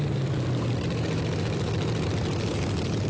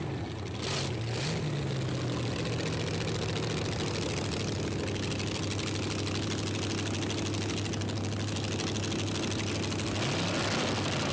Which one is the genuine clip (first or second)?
second